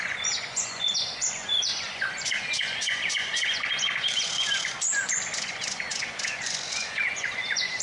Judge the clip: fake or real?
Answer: fake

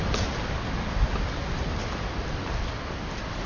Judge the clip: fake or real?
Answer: real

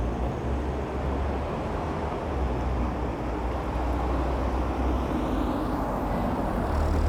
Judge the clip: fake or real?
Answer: real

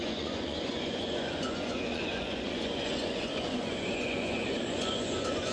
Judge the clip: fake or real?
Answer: fake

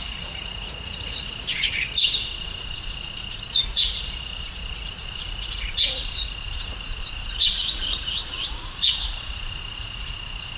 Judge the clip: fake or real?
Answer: fake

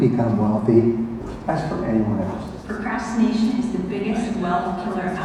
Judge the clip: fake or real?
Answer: fake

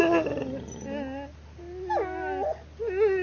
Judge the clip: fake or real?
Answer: real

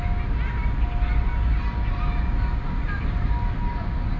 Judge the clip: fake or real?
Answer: real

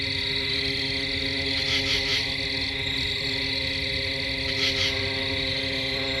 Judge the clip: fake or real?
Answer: real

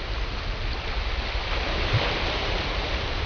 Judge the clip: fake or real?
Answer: real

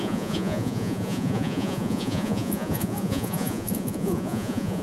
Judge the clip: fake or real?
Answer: fake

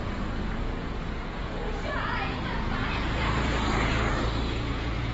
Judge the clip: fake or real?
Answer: fake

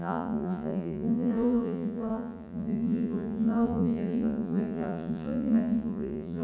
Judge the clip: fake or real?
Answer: fake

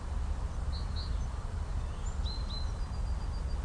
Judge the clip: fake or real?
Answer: real